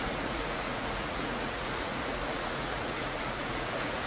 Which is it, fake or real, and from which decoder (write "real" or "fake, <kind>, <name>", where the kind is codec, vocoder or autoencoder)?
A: fake, vocoder, Vocos